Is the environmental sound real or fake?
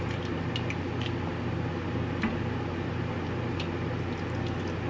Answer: real